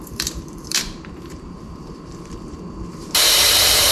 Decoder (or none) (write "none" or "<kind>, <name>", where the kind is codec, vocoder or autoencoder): vocoder, BigVGAN v2